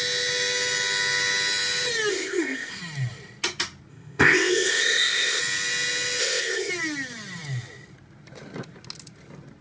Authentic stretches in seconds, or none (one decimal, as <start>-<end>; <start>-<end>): 0.0-2.1; 2.8-3.9; 5.4-6.2; 6.7-9.6